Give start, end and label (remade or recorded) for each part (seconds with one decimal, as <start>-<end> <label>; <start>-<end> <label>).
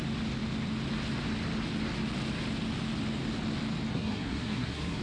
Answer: 0.0-3.9 recorded; 3.9-5.0 remade